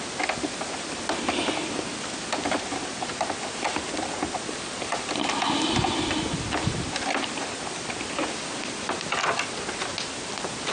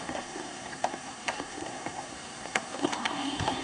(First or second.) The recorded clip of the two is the first